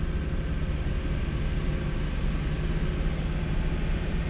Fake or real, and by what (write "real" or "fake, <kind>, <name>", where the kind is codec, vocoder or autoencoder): real